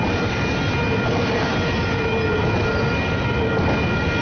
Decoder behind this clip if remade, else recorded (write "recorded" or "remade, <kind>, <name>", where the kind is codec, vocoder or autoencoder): recorded